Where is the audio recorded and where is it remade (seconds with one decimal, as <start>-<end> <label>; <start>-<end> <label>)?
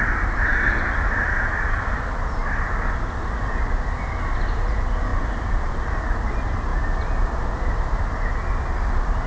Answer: 0.0-9.3 recorded